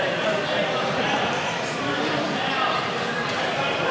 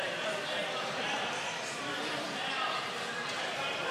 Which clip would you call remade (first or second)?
first